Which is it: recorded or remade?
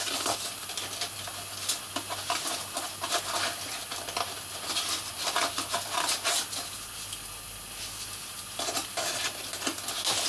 recorded